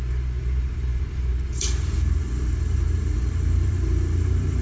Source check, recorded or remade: remade